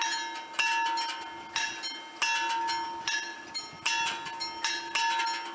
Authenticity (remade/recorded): recorded